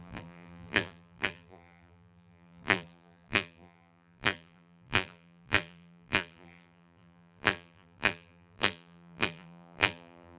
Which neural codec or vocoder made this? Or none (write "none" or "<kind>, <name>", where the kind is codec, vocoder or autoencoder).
vocoder, BigVGAN v2